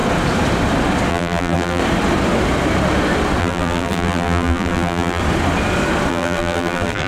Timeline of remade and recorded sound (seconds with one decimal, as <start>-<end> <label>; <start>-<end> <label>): 0.0-1.1 recorded; 1.1-1.8 remade; 1.8-3.4 recorded; 3.4-5.2 remade; 5.2-6.1 recorded; 6.1-7.1 remade